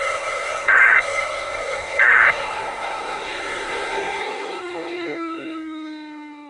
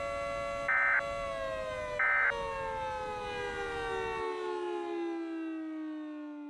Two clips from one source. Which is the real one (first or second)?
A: second